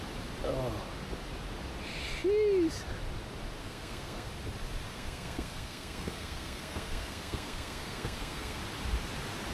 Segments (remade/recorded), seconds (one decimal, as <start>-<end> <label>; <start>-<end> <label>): 0.0-3.6 recorded; 3.6-4.3 remade; 4.3-4.9 recorded; 4.9-8.6 remade; 8.6-9.5 recorded